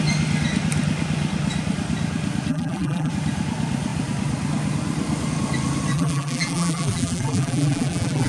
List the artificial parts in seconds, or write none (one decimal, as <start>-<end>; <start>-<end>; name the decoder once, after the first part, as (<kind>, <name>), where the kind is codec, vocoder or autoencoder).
2.5-3.1 (vocoder, BigVGAN v2); 5.9-8.3